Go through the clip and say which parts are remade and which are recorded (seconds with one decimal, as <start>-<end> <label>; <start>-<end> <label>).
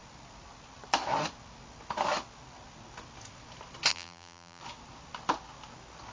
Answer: 0.0-3.9 recorded; 3.9-4.6 remade; 4.6-6.1 recorded